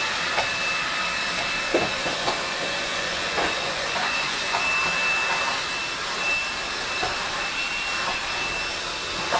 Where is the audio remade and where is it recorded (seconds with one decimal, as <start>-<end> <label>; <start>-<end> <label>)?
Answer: 0.0-1.7 recorded; 1.7-4.6 remade; 4.6-9.4 recorded